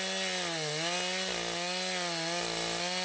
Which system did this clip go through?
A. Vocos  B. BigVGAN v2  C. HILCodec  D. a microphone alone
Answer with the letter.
D